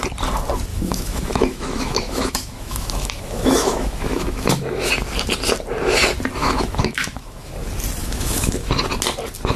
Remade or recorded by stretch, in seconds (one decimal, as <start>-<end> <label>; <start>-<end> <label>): 0.0-0.7 recorded; 0.7-4.9 remade; 4.9-6.4 recorded; 6.4-7.5 remade; 7.5-8.0 recorded; 8.0-8.7 remade; 8.7-9.6 recorded